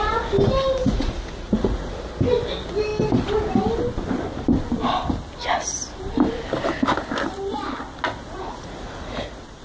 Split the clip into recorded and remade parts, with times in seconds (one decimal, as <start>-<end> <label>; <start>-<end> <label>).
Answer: 0.0-0.8 recorded; 0.8-2.0 remade; 2.0-8.2 recorded; 8.2-9.6 remade